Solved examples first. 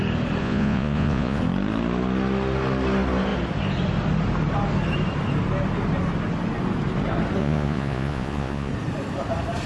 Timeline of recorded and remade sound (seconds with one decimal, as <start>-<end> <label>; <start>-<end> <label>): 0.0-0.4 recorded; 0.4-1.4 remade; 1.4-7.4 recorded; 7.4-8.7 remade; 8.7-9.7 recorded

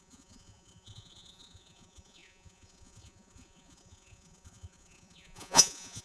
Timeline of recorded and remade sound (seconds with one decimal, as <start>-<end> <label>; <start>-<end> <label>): 0.0-6.0 remade

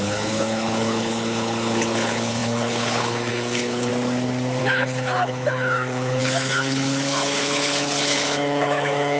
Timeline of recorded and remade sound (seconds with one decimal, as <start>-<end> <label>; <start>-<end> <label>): 0.0-3.9 remade; 3.9-4.6 recorded; 4.6-9.2 remade

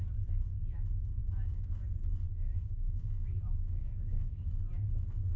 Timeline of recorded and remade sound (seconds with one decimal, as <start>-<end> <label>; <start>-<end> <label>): 0.0-1.2 recorded; 1.2-1.8 remade; 1.8-2.3 recorded; 2.3-4.5 remade; 4.5-5.4 recorded

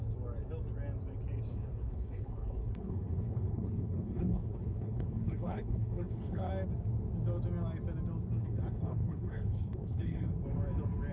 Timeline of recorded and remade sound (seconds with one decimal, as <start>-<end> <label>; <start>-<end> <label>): 0.0-1.5 recorded; 1.5-6.5 remade; 6.5-8.4 recorded; 8.4-10.3 remade; 10.3-11.1 recorded